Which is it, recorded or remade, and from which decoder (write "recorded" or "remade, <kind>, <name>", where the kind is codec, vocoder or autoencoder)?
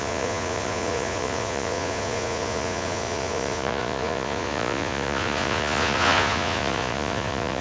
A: remade, vocoder, Vocos